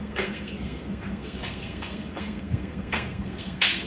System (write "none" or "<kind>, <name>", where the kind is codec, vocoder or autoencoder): codec, SNAC